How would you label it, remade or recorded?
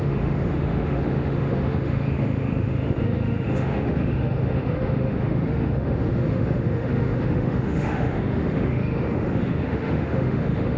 remade